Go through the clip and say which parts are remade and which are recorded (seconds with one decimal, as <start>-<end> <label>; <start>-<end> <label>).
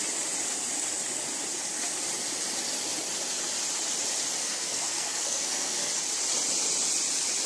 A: 0.0-4.4 recorded; 4.4-5.9 remade; 5.9-7.5 recorded